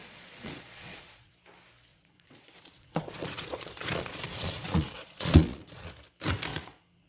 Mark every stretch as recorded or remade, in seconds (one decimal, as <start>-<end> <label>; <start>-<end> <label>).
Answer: 0.0-1.3 remade; 1.3-1.9 recorded; 1.9-5.9 remade; 5.9-6.5 recorded; 6.5-7.1 remade